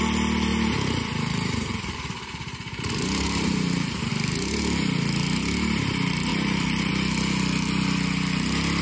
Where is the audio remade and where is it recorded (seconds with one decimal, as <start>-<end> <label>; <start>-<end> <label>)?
0.0-0.5 recorded; 0.5-4.1 remade; 4.1-6.3 recorded; 6.3-6.9 remade; 6.9-8.8 recorded